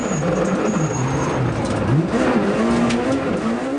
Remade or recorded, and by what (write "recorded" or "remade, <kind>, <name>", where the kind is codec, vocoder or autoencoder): recorded